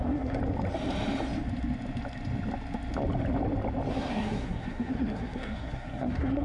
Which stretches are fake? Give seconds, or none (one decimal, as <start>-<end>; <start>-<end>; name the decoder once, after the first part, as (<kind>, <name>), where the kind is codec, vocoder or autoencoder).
0.0-0.4 (codec, SNAC); 3.9-6.4